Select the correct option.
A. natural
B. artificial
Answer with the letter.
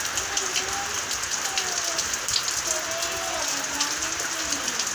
A